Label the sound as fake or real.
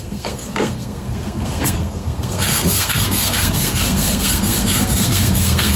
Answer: fake